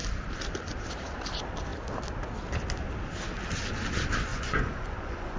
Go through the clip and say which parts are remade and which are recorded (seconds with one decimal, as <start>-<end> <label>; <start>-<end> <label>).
0.0-4.3 recorded; 4.3-5.4 remade